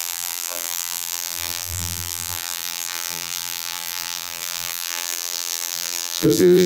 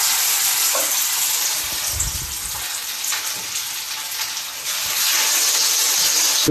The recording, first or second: second